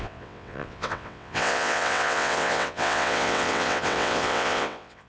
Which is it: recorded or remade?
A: remade